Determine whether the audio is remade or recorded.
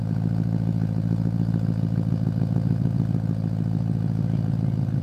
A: recorded